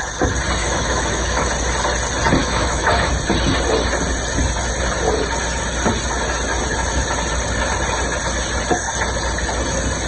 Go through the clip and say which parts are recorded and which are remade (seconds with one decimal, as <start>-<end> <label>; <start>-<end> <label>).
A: 0.0-0.6 recorded; 0.6-1.5 remade; 1.5-2.4 recorded; 2.4-3.1 remade; 3.1-10.1 recorded